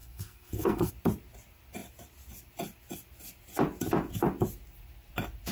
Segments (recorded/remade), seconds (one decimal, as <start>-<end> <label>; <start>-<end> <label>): 0.0-0.9 remade; 0.9-5.5 recorded